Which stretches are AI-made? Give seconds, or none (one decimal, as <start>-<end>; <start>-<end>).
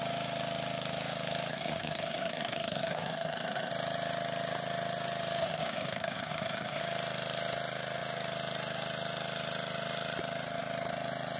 1.5-3.7; 5.4-6.8